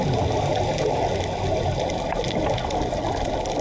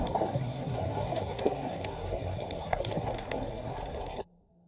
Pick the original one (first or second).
first